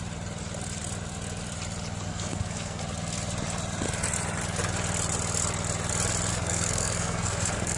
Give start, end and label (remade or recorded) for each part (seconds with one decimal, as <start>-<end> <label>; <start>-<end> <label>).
0.0-2.1 recorded; 2.1-2.8 remade; 2.8-6.3 recorded; 6.3-7.8 remade